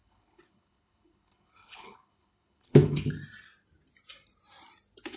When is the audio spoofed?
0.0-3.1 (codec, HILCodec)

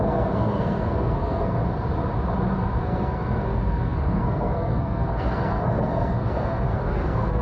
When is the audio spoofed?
0.0-1.6 (codec, SNAC); 2.8-7.4

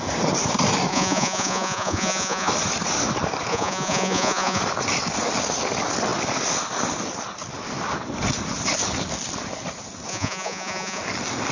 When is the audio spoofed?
0.9-2.5 (vocoder, Vocos); 3.5-4.6; 10.1-11.0

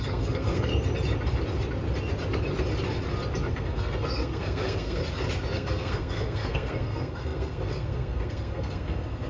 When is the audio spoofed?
0.0-0.7 (codec, SNAC); 3.5-5.0; 5.5-9.3

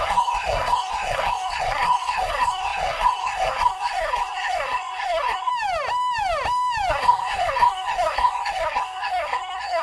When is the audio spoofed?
0.0-5.5 (codec, SNAC); 6.9-9.8

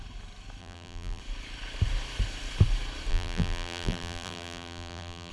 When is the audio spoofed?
0.6-1.2 (vocoder, BigVGAN v2); 3.1-5.3